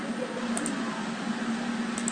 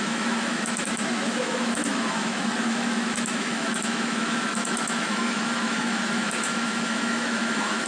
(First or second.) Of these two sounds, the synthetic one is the second